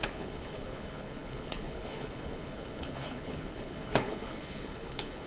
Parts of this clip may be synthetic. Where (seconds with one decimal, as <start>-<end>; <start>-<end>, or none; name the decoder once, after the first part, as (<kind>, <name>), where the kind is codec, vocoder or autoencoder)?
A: 0.0-5.3 (codec, HILCodec)